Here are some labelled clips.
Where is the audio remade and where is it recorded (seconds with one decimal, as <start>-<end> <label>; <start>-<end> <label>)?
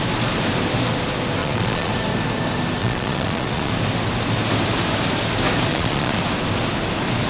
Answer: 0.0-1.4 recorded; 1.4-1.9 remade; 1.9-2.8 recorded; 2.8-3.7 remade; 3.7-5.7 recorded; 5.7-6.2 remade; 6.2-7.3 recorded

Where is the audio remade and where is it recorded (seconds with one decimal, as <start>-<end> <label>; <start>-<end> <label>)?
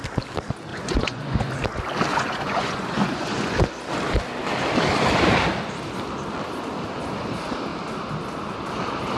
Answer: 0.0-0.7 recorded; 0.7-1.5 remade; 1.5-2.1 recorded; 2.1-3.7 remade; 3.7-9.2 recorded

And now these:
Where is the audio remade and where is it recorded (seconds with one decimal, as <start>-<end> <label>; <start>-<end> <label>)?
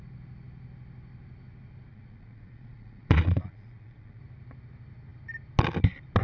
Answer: 0.0-1.9 recorded; 1.9-4.2 remade; 4.2-6.2 recorded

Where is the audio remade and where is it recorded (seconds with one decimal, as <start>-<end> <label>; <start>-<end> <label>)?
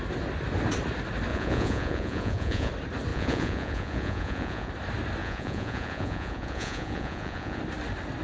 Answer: 0.0-1.3 recorded; 1.3-2.7 remade; 2.7-3.1 recorded; 3.1-4.7 remade; 4.7-5.2 recorded; 5.2-7.6 remade; 7.6-8.2 recorded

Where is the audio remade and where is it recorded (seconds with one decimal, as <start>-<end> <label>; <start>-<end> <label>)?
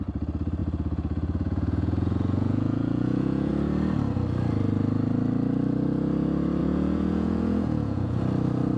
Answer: 0.0-0.6 recorded; 0.6-3.5 remade; 3.5-6.6 recorded; 6.6-8.2 remade; 8.2-8.8 recorded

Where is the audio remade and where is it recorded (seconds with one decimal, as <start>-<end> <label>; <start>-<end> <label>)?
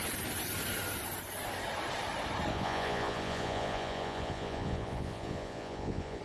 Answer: 0.0-2.5 recorded; 2.5-6.2 remade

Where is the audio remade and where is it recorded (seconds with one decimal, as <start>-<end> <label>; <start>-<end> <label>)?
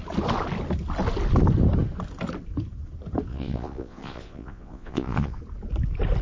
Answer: 0.0-3.3 recorded; 3.3-5.4 remade; 5.4-6.2 recorded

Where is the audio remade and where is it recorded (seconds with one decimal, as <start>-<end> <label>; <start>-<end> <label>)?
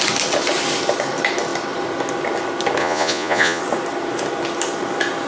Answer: 0.0-2.8 recorded; 2.8-3.6 remade; 3.6-5.3 recorded